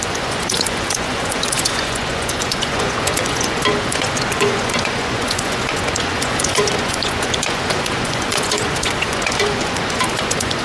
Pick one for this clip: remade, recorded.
remade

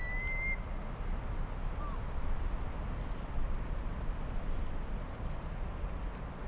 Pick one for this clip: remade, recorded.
recorded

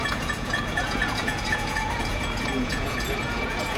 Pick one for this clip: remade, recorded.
remade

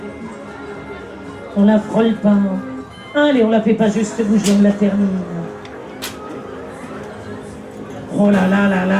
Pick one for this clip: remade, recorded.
recorded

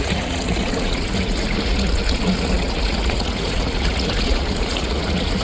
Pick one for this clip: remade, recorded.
remade